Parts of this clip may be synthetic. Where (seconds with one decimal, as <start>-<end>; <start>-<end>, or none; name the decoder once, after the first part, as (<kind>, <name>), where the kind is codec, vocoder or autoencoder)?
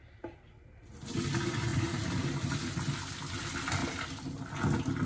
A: 1.7-2.5 (vocoder, BigVGAN v2)